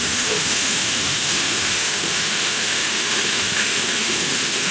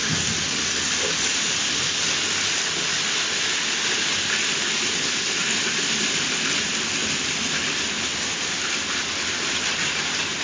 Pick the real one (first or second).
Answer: second